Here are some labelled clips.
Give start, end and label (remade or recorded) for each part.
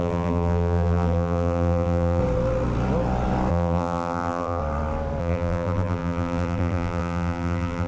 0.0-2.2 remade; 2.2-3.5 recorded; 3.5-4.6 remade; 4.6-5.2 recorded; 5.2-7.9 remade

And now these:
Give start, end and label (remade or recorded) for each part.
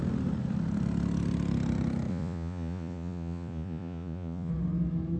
0.0-2.1 recorded; 2.1-4.5 remade; 4.5-5.2 recorded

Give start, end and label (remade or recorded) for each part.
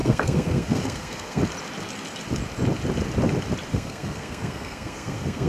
0.0-1.4 remade; 1.4-3.7 recorded; 3.7-5.5 remade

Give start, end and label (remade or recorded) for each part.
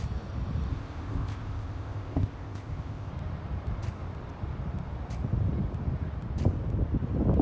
0.0-0.7 recorded; 0.7-3.1 remade; 3.1-7.4 recorded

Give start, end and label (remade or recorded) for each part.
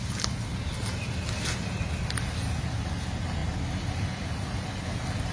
0.0-5.3 recorded